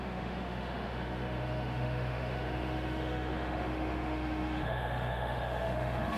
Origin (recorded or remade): remade